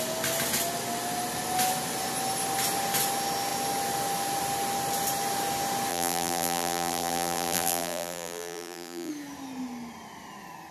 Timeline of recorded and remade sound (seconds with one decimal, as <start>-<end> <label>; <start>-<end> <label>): 0.0-5.9 recorded; 5.9-9.1 remade; 9.1-10.7 recorded